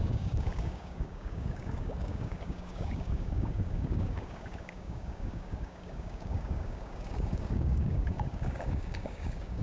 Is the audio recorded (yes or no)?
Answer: no